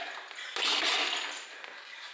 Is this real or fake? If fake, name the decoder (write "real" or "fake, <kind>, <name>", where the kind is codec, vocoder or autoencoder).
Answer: real